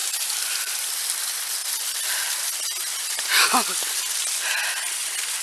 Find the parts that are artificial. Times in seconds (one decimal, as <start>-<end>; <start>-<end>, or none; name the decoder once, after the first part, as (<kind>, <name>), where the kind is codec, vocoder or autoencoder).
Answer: none